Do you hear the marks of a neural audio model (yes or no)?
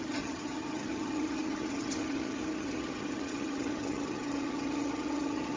yes